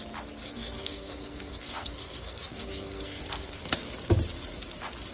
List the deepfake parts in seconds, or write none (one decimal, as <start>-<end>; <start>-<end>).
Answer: 0.4-3.5